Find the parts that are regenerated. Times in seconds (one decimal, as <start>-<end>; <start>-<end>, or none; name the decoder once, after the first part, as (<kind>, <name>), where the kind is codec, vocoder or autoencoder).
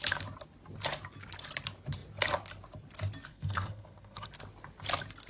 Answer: 3.3-4.3 (codec, SNAC)